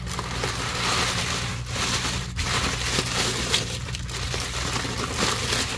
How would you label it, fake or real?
real